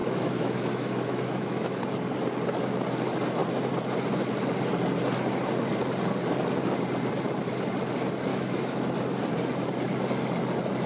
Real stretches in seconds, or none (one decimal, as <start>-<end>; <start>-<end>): 1.8-8.3; 8.8-10.9